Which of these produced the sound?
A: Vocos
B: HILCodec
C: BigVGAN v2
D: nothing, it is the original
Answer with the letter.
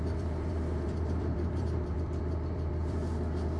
C